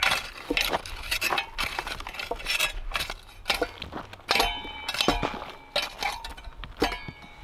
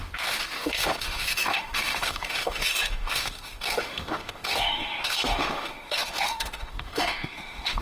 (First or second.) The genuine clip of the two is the first